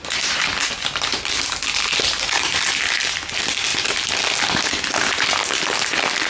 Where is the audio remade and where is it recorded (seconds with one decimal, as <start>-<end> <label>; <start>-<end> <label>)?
0.0-6.3 recorded